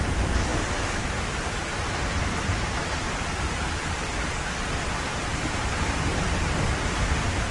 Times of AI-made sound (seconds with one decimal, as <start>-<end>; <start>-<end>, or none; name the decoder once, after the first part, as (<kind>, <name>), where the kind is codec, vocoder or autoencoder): none